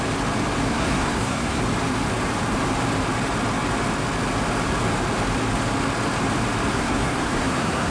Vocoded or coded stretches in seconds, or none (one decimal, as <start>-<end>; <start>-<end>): 0.7-1.6; 6.7-7.9